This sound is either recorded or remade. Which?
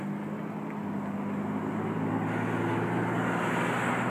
recorded